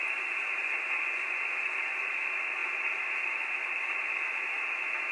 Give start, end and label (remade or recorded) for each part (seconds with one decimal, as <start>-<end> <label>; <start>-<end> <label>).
0.0-0.6 recorded; 0.6-2.1 remade; 2.1-5.1 recorded